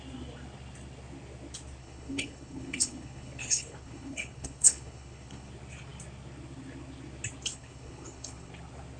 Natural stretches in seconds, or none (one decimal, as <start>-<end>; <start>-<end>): 0.0-1.8; 5.5-7.5; 8.5-9.0